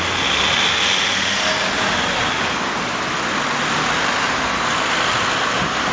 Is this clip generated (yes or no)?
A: no